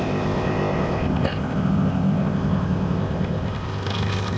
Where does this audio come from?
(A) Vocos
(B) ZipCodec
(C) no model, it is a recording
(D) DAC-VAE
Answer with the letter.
B